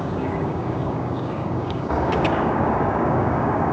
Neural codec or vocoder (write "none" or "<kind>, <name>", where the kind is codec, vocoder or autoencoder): codec, DAC